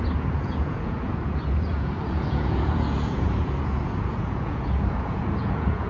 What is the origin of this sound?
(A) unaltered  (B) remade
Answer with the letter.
B